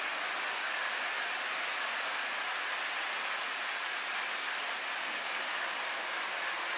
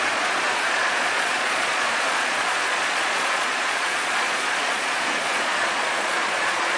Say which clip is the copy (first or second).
second